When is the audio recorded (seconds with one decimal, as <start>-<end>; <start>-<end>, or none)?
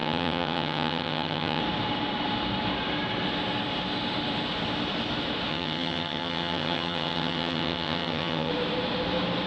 1.6-5.5; 8.5-9.5